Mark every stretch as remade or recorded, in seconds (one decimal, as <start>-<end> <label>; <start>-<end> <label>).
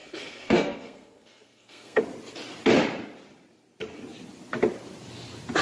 0.0-2.0 remade; 2.0-5.6 recorded